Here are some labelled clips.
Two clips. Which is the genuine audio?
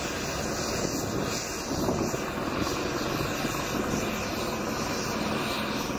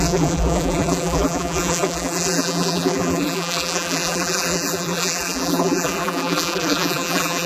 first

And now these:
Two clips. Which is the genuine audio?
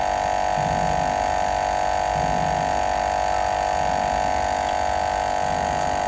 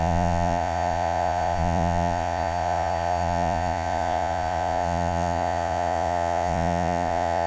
first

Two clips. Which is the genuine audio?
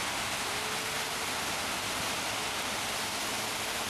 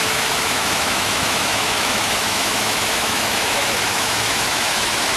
first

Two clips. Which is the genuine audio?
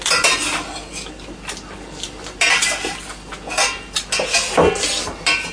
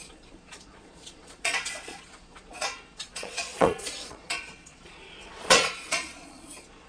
first